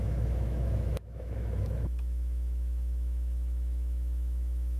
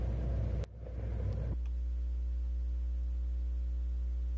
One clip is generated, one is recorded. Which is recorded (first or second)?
second